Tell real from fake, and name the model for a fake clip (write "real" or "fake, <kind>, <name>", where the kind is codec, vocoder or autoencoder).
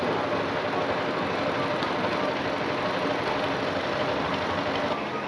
real